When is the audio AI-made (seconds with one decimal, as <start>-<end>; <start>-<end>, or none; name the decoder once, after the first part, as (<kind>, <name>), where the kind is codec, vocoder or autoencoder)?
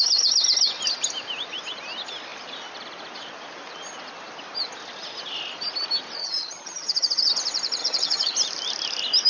6.2-7.3 (vocoder, HiFi-GAN); 7.8-8.3